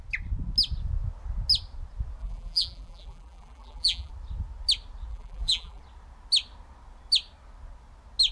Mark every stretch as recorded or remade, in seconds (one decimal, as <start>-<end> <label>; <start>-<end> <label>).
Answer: 0.0-2.2 recorded; 2.2-4.1 remade; 4.1-5.1 recorded; 5.1-5.8 remade; 5.8-8.3 recorded